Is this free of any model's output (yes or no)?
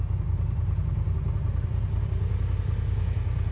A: yes